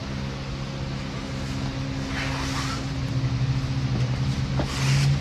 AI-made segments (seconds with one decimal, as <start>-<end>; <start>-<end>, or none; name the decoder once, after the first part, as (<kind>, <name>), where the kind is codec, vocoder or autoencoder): none

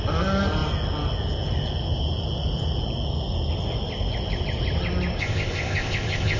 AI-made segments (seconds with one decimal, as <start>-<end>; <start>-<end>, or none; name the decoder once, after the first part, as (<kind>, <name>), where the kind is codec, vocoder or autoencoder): 5.2-6.4 (codec, ZipCodec)

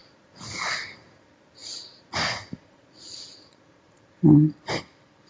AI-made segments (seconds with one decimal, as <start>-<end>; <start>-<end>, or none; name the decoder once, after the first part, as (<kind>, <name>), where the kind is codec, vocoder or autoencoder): 0.0-0.7 (vocoder, Vocos); 1.6-4.0

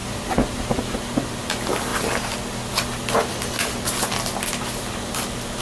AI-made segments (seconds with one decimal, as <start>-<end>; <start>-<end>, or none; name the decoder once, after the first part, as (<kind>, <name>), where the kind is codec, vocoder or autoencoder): 0.0-0.9 (vocoder, BigVGAN v2)

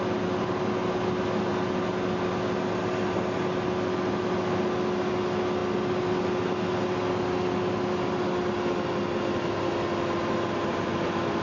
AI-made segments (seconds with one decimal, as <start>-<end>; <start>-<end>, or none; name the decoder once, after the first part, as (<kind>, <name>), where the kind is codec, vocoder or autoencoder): none

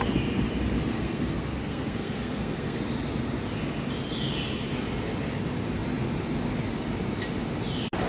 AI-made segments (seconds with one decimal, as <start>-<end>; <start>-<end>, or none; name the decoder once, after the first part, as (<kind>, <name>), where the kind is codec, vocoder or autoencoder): 0.9-2.8 (codec, SNAC)